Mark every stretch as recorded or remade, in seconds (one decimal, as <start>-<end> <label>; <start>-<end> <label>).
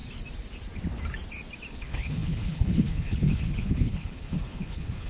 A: 0.0-1.7 recorded; 1.7-5.1 remade